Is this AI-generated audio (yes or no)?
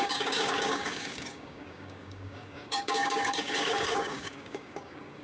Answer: yes